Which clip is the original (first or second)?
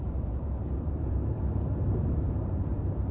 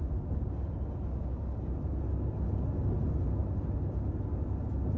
second